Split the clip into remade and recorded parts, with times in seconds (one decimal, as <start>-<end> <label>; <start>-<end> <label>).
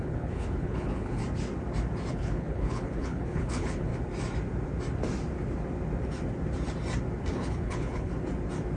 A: 0.0-1.2 remade; 1.2-2.1 recorded; 2.1-3.9 remade; 3.9-7.3 recorded; 7.3-8.1 remade; 8.1-8.8 recorded